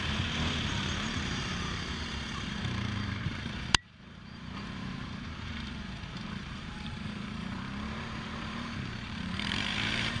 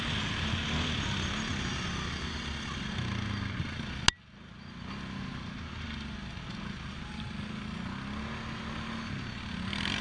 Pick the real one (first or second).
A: second